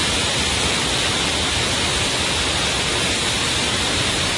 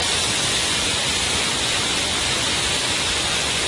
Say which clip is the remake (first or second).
second